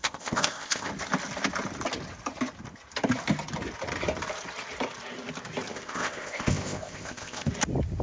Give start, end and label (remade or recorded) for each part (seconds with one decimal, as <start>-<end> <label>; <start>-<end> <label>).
0.0-0.9 remade; 0.9-5.7 recorded; 5.7-7.5 remade; 7.5-8.0 recorded